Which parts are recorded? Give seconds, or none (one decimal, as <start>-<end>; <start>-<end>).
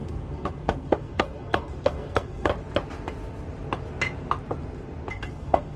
2.5-5.1